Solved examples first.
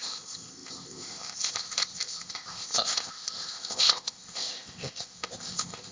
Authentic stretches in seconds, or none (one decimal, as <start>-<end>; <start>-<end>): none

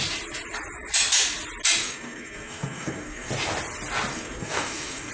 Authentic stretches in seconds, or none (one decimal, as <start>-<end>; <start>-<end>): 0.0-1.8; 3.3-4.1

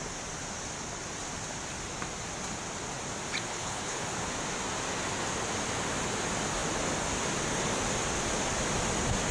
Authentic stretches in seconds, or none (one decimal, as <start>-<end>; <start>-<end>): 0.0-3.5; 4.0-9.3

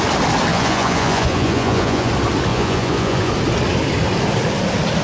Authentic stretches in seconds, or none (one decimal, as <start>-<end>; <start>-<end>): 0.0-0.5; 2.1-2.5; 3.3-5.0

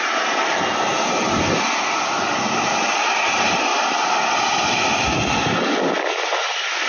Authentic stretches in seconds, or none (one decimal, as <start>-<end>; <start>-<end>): 0.0-6.9

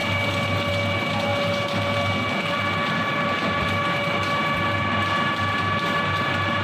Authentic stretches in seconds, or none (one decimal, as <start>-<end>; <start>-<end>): 0.0-6.6

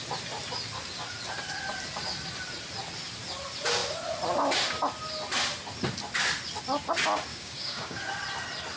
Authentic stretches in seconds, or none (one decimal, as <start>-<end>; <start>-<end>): 0.0-7.3; 8.0-8.8